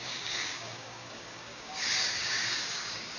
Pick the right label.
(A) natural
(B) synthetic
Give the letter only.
B